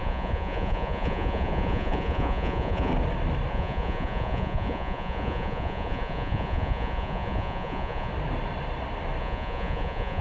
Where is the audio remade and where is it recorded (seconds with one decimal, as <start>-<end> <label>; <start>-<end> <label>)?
0.0-2.9 remade; 2.9-3.5 recorded; 3.5-8.1 remade; 8.1-9.2 recorded; 9.2-10.2 remade